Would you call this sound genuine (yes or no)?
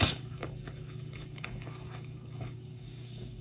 no